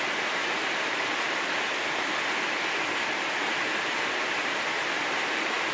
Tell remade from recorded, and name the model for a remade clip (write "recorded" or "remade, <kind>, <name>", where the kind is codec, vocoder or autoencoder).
recorded